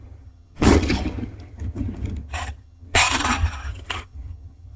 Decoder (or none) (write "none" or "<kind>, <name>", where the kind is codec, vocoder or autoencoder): vocoder, HiFi-GAN